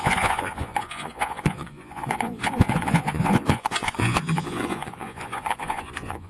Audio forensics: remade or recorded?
remade